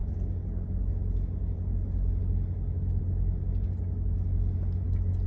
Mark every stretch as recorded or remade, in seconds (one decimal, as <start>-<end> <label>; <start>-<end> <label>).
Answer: 0.0-5.3 recorded